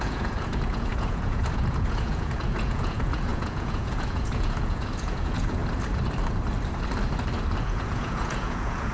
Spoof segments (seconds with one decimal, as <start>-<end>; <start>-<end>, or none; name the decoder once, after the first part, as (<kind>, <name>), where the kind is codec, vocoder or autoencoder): 0.0-5.6 (vocoder, Vocos); 7.6-8.9